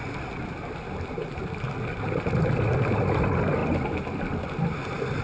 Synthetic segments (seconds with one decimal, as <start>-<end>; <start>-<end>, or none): none